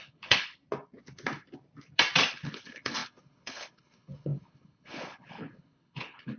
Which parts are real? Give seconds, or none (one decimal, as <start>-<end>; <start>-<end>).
0.6-2.3